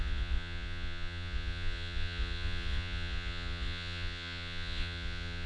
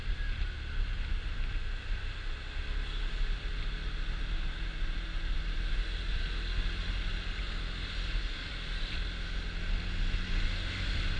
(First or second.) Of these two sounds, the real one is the second